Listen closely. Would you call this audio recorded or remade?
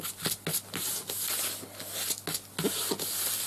recorded